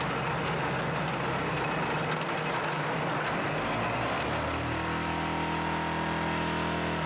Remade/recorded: recorded